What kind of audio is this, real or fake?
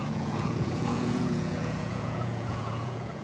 fake